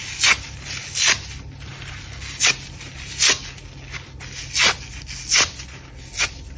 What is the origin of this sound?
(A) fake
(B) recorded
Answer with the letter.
B